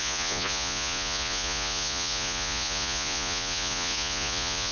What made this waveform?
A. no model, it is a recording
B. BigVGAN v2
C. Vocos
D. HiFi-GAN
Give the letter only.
C